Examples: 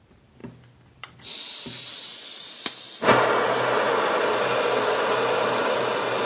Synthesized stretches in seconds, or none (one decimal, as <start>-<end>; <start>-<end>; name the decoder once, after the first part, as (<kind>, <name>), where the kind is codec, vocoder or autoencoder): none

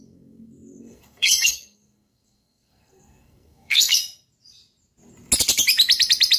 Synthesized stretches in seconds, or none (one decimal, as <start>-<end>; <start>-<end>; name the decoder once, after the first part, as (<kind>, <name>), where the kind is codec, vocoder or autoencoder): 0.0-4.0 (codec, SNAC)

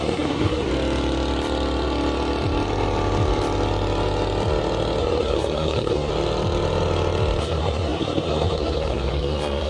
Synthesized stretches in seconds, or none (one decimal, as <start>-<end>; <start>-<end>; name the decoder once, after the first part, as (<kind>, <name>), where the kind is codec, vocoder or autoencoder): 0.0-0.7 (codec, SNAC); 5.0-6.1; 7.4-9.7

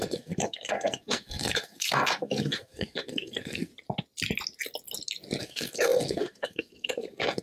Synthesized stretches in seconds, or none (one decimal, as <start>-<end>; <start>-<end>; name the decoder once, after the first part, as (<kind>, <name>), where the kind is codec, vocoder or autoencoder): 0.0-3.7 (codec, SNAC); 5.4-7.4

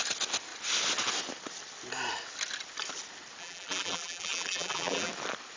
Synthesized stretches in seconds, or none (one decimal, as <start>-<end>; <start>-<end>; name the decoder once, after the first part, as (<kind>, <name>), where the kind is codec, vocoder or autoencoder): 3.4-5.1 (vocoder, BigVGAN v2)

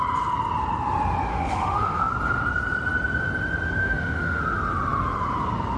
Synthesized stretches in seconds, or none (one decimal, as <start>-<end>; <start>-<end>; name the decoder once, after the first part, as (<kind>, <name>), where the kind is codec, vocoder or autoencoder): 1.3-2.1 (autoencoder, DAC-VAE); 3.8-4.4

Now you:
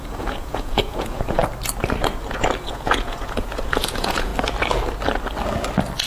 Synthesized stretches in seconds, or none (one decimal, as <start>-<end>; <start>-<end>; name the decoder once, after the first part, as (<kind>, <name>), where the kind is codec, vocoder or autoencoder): 0.0-1.4 (vocoder, Vocos); 2.6-4.3